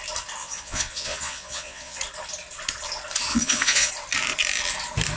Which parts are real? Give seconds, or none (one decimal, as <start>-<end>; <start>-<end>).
0.0-0.4; 2.0-3.3; 3.9-5.2